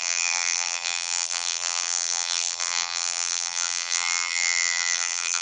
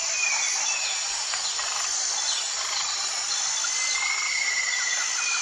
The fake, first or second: first